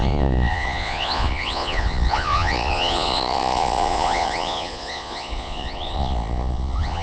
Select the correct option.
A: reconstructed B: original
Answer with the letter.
A